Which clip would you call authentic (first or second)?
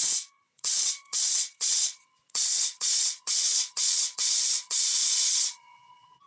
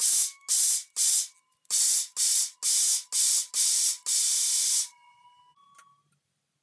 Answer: second